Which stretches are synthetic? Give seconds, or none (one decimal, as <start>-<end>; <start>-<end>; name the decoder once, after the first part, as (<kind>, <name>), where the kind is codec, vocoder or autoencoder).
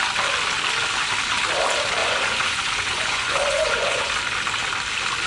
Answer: 2.0-4.1 (vocoder, Vocos)